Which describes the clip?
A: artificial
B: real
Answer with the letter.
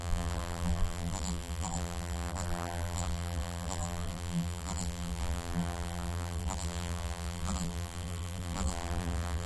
A